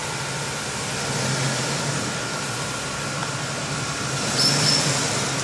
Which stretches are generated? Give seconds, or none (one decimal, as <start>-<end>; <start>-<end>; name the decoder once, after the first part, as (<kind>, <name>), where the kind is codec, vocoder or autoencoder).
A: none